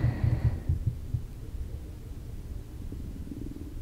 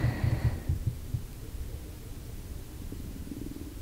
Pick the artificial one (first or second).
second